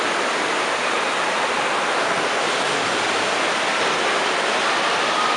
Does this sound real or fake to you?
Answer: real